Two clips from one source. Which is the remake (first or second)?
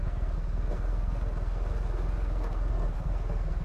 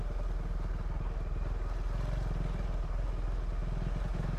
first